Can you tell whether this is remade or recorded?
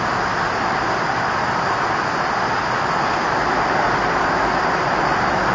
recorded